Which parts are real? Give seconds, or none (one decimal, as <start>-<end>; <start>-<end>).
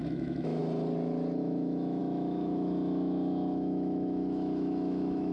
0.6-1.4